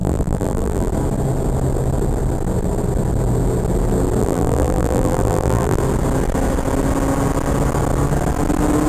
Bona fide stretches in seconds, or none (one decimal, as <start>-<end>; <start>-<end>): 0.9-4.2; 5.8-8.9